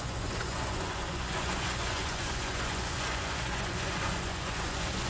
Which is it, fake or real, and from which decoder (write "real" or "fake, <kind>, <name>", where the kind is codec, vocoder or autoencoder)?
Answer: fake, vocoder, Vocos